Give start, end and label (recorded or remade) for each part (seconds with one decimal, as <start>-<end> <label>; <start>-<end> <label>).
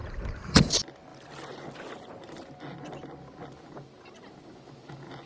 0.0-5.3 recorded